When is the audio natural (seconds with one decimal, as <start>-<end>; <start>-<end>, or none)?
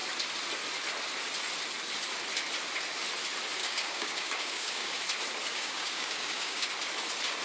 0.0-3.6; 4.9-5.5; 6.7-7.4